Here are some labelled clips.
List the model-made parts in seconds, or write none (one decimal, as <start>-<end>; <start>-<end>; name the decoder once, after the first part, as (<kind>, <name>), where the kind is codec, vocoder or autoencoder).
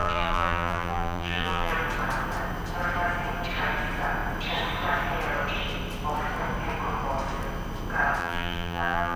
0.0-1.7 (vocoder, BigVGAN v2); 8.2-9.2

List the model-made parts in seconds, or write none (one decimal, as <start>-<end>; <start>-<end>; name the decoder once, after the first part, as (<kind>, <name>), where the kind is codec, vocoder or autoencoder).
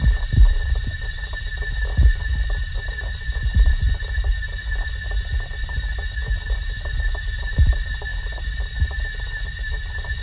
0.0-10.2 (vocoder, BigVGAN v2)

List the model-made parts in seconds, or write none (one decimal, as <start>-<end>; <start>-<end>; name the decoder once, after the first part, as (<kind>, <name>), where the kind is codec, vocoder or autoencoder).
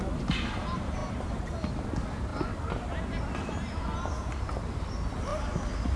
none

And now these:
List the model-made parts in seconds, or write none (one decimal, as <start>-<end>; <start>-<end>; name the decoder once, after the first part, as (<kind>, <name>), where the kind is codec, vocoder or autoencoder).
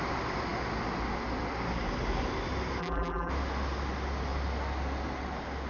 2.8-3.3 (vocoder, BigVGAN v2)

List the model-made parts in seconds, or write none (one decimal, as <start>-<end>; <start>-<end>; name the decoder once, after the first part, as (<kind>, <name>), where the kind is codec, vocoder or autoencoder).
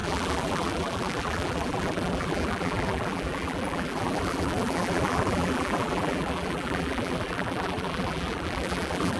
0.0-9.2 (vocoder, BigVGAN v2)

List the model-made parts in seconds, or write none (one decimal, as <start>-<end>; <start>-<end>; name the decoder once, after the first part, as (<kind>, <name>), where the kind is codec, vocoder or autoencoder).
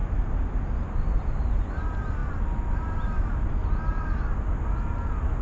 0.0-2.2 (vocoder, BigVGAN v2); 2.7-3.6; 4.9-5.4